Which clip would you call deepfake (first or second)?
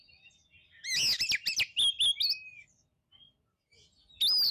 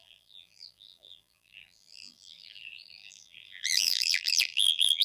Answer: second